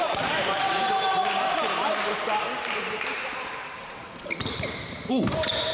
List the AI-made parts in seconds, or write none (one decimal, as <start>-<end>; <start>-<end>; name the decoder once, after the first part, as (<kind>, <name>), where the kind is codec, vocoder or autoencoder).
0.0-5.7 (vocoder, BigVGAN v2)